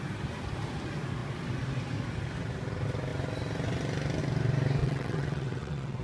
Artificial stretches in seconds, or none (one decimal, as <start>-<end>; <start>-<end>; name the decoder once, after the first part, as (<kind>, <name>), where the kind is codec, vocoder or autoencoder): 4.8-6.0 (vocoder, WaveNeXt)